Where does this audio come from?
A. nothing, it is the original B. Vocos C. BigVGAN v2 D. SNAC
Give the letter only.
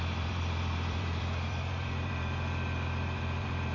C